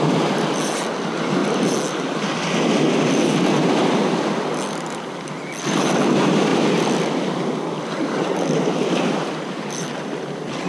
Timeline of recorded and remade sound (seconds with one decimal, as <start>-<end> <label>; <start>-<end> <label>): 0.0-6.5 recorded; 6.5-9.9 remade; 9.9-10.7 recorded